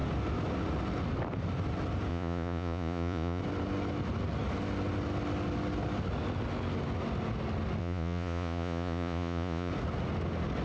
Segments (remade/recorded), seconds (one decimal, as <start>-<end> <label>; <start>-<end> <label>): 0.0-2.1 recorded; 2.1-3.4 remade; 3.4-7.8 recorded; 7.8-9.7 remade; 9.7-10.6 recorded